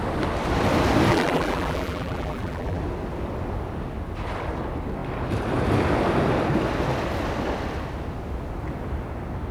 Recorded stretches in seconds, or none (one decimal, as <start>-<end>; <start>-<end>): 0.0-1.1; 2.8-9.5